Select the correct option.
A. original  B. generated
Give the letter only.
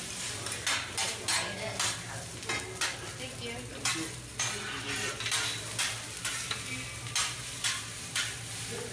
A